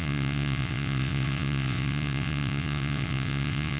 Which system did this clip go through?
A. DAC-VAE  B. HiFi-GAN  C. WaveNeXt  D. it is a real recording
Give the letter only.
C